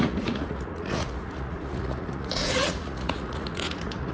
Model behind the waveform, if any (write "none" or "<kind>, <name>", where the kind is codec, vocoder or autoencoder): vocoder, Vocos